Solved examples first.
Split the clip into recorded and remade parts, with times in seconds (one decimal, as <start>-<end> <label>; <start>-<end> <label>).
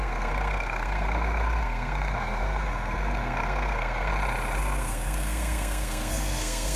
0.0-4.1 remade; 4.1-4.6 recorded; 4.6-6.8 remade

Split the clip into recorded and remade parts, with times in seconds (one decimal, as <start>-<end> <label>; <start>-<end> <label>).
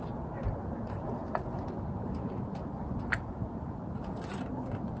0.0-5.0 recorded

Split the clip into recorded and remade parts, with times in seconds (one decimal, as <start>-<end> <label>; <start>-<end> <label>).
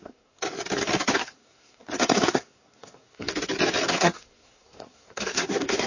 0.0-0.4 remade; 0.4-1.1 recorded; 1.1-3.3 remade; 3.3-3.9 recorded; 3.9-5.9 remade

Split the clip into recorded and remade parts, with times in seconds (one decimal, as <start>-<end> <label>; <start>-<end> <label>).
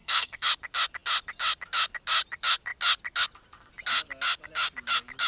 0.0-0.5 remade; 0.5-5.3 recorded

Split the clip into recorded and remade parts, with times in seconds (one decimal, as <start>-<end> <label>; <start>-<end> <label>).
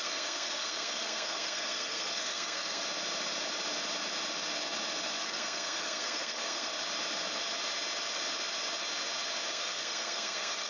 0.0-2.8 remade; 2.8-5.2 recorded; 5.2-6.7 remade; 6.7-9.5 recorded; 9.5-10.7 remade